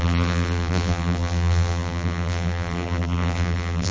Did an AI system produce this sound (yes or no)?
yes